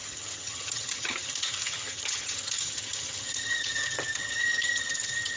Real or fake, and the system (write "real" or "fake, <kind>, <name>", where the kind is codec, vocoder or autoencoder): fake, vocoder, HiFi-GAN